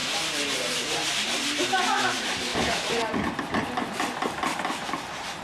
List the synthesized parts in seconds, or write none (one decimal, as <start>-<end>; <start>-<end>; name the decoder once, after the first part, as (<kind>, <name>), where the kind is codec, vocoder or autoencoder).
none